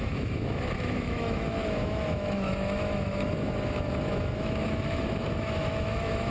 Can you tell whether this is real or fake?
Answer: fake